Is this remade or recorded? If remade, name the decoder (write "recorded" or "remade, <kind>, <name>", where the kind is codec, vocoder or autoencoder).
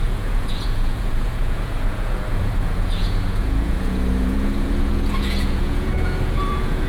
remade, vocoder, Vocos